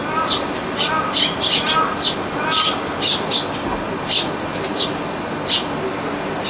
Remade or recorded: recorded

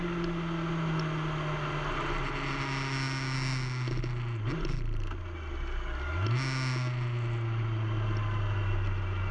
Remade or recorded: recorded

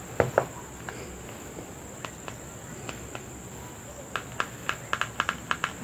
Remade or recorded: recorded